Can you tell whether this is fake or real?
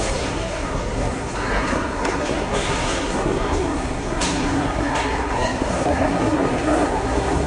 fake